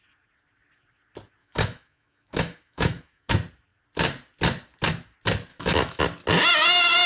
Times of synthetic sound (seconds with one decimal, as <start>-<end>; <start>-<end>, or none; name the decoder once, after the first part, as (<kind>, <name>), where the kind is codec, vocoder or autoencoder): 1.4-3.3 (autoencoder, DAC-VAE); 5.5-6.0